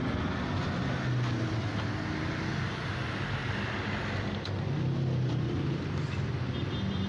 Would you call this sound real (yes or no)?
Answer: yes